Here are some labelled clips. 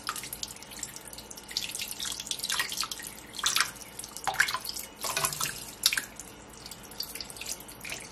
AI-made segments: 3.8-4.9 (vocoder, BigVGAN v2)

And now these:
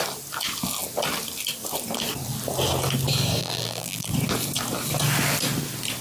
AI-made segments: 3.4-4.1 (vocoder, BigVGAN v2)